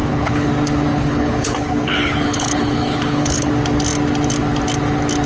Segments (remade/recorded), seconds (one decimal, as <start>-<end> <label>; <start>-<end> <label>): 0.0-0.5 remade; 0.5-0.9 recorded; 0.9-3.5 remade; 3.5-5.3 recorded